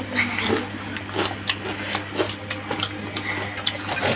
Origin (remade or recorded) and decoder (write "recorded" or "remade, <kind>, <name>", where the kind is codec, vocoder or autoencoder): recorded